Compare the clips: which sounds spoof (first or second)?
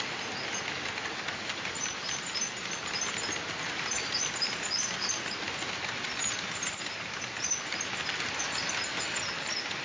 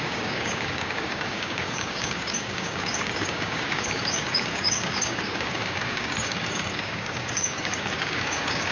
second